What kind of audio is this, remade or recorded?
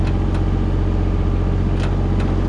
recorded